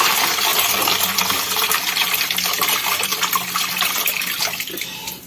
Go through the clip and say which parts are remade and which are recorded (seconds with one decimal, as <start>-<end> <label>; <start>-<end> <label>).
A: 0.0-3.1 remade; 3.1-5.3 recorded